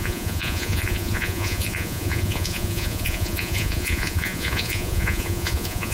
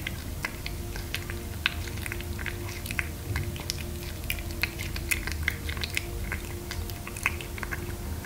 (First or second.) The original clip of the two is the second